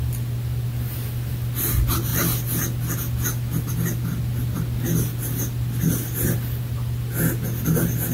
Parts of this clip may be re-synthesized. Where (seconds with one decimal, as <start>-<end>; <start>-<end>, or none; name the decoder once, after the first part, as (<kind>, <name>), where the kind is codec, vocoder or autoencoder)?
none

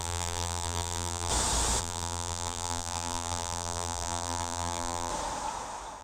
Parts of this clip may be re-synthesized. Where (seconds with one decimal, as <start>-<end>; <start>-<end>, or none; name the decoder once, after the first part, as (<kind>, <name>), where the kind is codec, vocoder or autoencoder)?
0.0-1.3 (vocoder, BigVGAN v2); 1.8-5.1

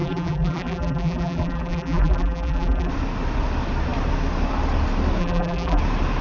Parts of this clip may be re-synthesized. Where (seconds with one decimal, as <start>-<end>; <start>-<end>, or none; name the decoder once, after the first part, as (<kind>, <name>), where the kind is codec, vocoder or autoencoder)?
0.0-2.9 (vocoder, BigVGAN v2); 5.2-5.8